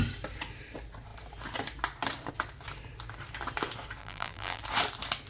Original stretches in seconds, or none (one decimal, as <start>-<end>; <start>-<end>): 0.0-4.0; 4.6-5.3